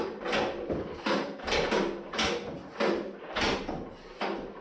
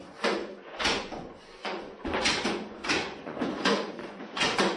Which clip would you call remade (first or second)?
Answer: second